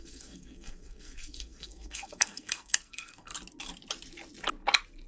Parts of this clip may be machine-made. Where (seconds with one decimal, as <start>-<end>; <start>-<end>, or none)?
0.0-3.3